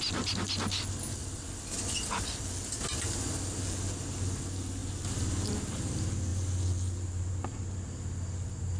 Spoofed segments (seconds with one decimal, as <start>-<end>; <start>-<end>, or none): 1.2-1.8; 6.3-7.3